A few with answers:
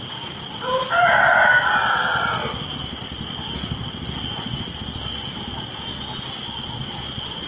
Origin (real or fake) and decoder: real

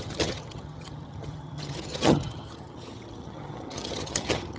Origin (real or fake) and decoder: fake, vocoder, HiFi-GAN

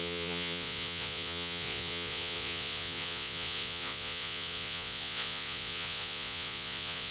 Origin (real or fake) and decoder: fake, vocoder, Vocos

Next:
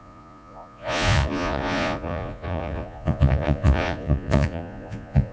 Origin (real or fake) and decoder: fake, vocoder, Vocos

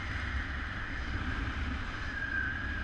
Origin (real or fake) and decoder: real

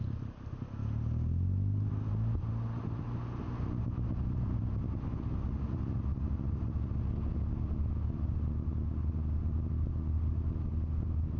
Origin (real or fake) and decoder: real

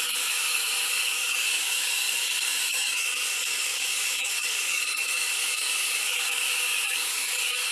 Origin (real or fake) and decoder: fake, codec, DAC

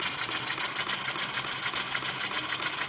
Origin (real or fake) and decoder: real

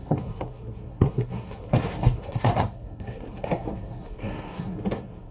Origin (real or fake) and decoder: fake, codec, SNAC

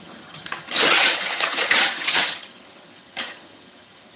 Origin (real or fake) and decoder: fake, vocoder, HiFi-GAN